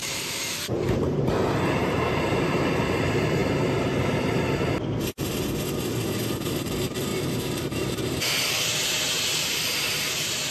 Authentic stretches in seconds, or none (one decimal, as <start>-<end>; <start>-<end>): 3.4-6.5

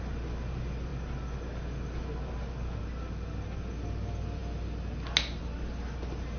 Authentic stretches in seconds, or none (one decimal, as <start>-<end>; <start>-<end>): 0.0-6.4

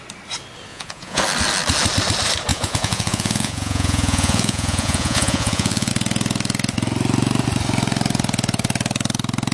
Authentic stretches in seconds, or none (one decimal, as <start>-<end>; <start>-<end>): 0.0-0.7; 1.2-2.5; 5.9-9.5

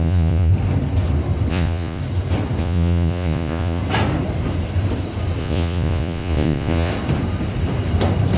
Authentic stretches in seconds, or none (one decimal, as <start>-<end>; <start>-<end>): 0.5-1.5; 2.0-2.6; 3.8-5.4; 6.9-8.4

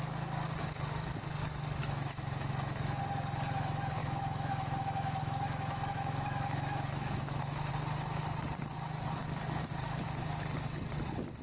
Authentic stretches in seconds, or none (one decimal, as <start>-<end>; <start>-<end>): 0.0-1.8; 3.0-4.0; 7.7-11.4

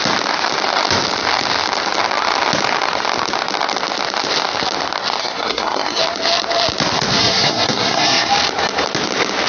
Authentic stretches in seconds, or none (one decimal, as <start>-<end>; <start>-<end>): 0.0-5.2; 6.0-7.2; 8.3-9.5

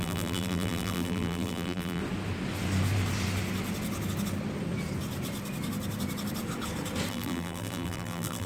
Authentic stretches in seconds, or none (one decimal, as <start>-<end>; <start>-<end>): 2.0-7.1